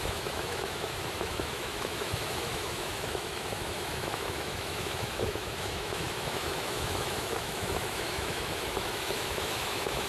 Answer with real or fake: fake